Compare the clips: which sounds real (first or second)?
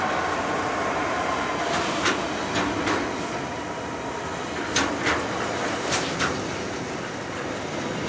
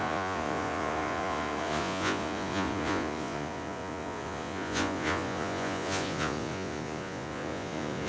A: first